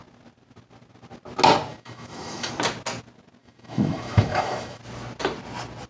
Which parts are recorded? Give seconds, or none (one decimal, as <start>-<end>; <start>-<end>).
0.0-1.7; 2.5-3.4; 4.8-5.9